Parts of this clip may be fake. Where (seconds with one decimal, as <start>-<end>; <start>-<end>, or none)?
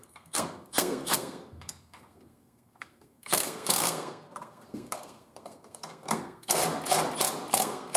0.0-6.6; 7.5-8.0